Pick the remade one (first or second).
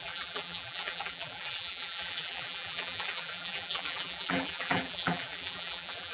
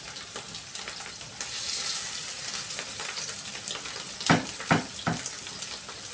first